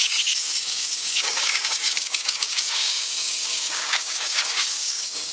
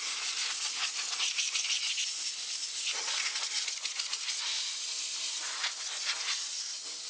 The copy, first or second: first